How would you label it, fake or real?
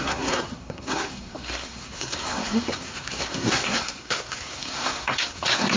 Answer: fake